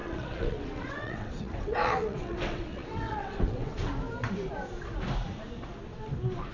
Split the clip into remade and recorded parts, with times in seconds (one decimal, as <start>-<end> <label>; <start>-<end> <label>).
0.0-3.9 remade; 3.9-6.5 recorded